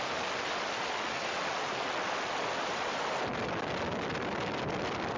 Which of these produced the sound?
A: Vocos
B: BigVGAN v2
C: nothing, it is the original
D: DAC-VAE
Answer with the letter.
C